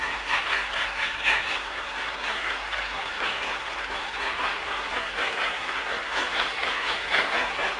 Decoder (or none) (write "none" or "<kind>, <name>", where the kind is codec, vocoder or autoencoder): codec, SNAC